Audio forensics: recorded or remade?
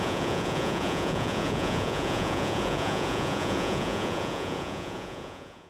remade